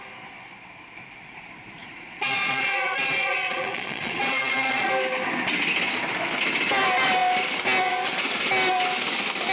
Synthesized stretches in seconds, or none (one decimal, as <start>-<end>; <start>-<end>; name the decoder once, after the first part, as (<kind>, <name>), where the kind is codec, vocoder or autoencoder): 1.8-4.9 (vocoder, Vocos)